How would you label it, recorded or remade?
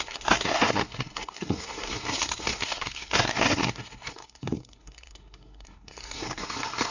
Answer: remade